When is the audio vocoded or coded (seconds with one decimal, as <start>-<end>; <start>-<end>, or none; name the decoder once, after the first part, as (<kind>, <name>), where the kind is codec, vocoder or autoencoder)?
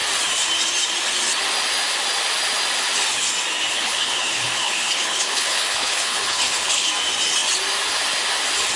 3.7-6.9 (codec, HILCodec)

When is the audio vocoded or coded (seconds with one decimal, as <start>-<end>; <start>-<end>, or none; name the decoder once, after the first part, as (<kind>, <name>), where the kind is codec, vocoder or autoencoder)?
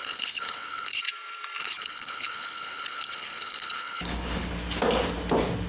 0.0-1.0 (codec, HILCodec); 1.6-4.5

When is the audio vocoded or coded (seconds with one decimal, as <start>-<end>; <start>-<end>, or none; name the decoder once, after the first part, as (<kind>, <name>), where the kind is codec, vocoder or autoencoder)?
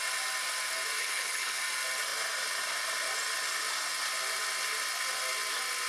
1.0-1.6 (codec, HILCodec)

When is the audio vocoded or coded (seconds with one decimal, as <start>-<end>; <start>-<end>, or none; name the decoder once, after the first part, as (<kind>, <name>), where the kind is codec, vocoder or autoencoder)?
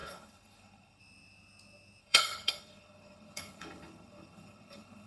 0.0-1.0 (codec, HILCodec); 2.0-5.1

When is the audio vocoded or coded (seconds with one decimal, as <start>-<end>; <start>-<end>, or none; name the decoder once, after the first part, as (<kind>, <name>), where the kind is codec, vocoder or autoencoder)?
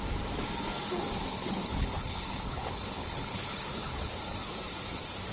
1.3-4.1 (codec, HILCodec)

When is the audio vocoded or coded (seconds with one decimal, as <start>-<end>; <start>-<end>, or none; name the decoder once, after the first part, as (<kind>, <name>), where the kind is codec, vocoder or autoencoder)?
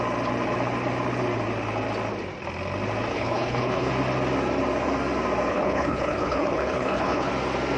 3.1-3.9 (codec, HILCodec); 5.5-7.3